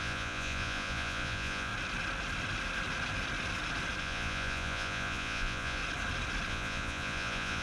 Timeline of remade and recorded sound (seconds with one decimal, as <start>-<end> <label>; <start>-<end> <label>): 0.0-1.7 remade; 1.7-4.0 recorded; 4.0-5.8 remade; 5.8-6.5 recorded; 6.5-7.6 remade